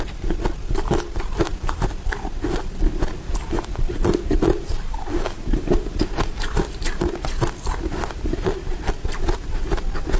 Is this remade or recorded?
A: recorded